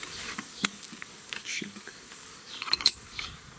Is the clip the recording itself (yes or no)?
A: no